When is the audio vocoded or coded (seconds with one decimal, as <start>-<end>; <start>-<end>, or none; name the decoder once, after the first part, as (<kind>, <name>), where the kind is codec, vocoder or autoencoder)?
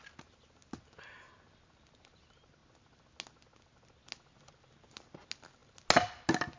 none